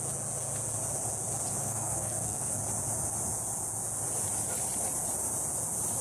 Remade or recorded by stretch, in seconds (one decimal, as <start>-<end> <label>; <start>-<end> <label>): 0.0-1.6 recorded; 1.6-2.6 remade; 2.6-6.0 recorded